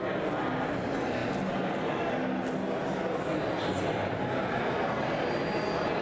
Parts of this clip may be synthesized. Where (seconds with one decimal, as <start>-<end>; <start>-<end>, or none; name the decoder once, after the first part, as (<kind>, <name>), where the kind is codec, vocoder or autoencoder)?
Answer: none

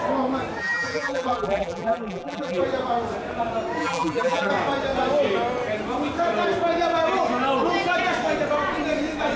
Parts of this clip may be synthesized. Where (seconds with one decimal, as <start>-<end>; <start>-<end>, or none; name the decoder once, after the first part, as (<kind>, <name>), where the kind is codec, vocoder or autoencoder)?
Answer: 0.6-2.6 (vocoder, BigVGAN v2); 3.8-4.5

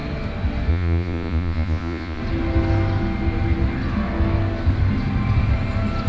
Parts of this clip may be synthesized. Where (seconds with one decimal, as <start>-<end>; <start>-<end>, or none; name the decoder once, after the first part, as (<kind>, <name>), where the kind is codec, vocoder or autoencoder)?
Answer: 0.7-2.2 (vocoder, Vocos)

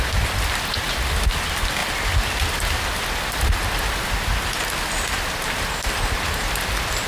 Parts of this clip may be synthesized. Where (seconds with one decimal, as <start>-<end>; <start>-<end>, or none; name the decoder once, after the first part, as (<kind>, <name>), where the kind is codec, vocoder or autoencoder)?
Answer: none

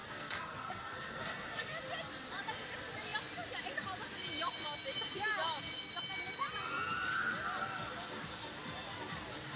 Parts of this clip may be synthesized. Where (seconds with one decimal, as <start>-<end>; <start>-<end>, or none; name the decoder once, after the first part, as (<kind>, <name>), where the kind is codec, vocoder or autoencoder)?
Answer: 0.0-1.7 (codec, SNAC)

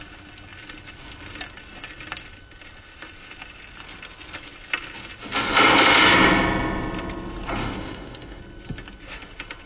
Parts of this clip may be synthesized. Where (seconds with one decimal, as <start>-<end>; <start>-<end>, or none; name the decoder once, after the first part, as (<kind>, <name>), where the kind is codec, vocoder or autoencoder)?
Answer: 7.6-8.4 (autoencoder, DAC-VAE)

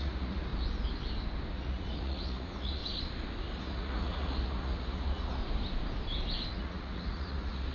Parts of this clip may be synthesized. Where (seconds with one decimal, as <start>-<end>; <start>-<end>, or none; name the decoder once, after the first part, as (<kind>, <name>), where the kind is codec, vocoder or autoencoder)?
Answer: 0.0-0.5 (vocoder, Vocos); 1.5-2.8; 3.6-5.4; 6.5-7.7

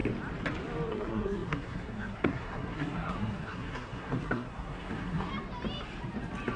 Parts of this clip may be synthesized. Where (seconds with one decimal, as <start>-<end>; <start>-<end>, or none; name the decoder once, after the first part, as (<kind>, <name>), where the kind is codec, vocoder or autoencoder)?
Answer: 0.9-5.3 (codec, SNAC)